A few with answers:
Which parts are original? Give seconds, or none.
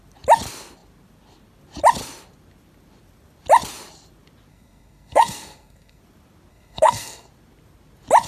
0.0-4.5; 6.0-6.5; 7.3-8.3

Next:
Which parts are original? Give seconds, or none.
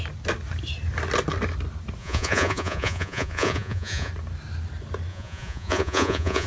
0.0-2.0; 4.1-5.1